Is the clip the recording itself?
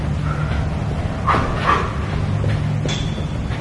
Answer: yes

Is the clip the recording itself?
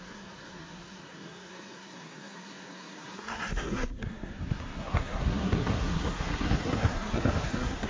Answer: no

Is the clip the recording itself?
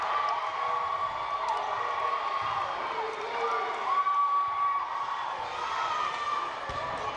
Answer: yes